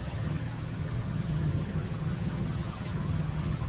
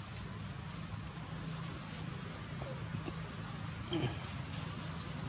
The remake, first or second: first